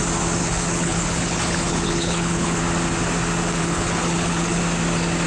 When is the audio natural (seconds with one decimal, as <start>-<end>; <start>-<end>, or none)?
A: 0.0-0.4; 2.6-3.6; 4.6-5.3